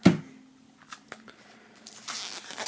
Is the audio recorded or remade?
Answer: recorded